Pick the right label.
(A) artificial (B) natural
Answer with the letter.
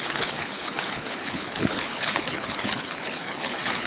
A